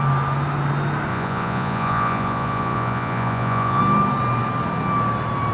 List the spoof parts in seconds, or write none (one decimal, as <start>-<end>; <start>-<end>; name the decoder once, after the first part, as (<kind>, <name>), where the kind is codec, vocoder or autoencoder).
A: 1.1-3.8 (vocoder, Vocos)